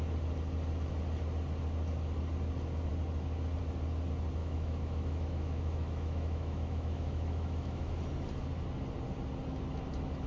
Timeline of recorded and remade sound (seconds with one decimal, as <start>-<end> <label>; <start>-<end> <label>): 0.0-4.4 recorded; 4.4-8.0 remade; 8.0-10.3 recorded